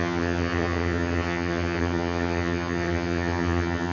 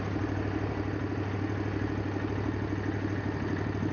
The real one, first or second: second